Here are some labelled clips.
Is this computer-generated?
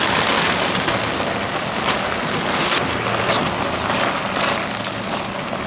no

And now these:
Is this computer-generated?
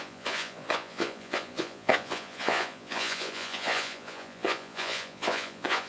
yes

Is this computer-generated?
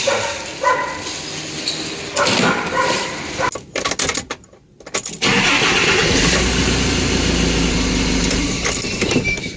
no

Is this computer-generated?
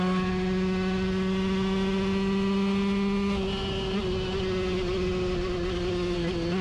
no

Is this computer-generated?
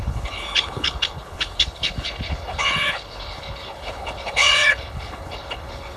yes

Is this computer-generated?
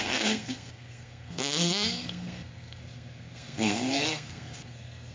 yes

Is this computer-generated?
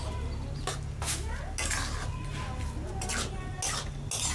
no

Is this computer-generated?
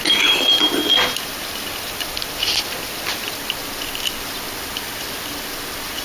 no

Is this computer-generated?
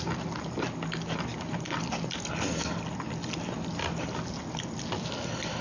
no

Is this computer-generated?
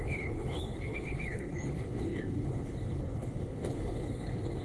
yes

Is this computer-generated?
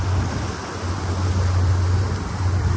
no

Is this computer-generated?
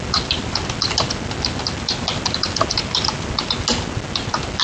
no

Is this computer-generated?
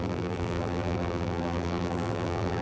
yes